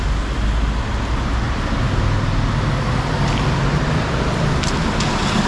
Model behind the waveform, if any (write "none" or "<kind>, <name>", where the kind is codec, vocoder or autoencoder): none